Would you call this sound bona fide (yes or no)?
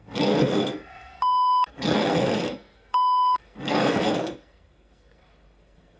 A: no